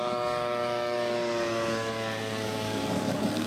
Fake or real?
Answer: fake